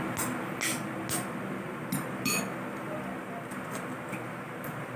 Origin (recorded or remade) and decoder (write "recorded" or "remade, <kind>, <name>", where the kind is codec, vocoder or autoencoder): recorded